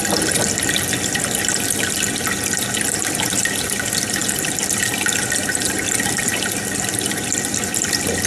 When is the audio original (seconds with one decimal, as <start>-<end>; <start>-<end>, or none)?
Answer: 0.0-4.2; 7.1-8.3